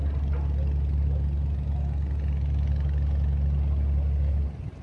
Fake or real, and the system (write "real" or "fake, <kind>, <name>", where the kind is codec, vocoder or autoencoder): real